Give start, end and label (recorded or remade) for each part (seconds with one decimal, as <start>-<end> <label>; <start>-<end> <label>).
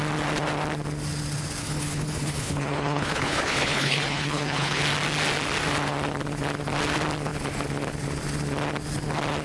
0.0-1.6 recorded; 1.6-4.8 remade; 4.8-9.4 recorded